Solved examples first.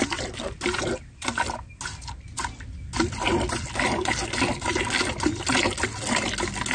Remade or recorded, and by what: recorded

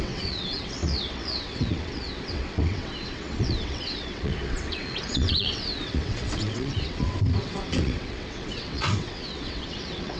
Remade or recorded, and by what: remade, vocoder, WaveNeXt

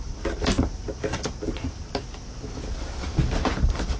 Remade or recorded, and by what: recorded